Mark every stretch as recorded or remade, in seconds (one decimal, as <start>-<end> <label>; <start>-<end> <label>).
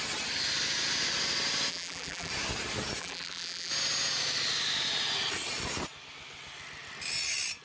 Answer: 0.0-1.7 recorded; 1.7-2.3 remade; 2.3-3.0 recorded; 3.0-3.7 remade; 3.7-7.6 recorded